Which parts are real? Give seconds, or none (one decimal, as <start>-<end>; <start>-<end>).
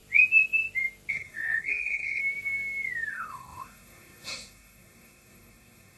0.0-1.1; 2.2-3.1